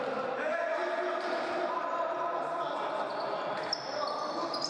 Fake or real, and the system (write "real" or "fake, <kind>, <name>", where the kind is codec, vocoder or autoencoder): real